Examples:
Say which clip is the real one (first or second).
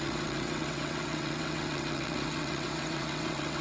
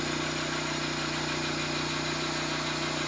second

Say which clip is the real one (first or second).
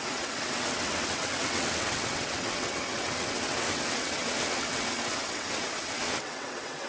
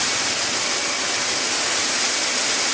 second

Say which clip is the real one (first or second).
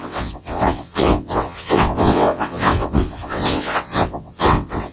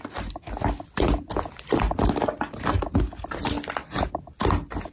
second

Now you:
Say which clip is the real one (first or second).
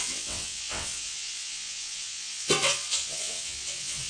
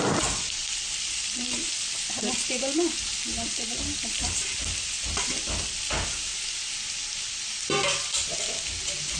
second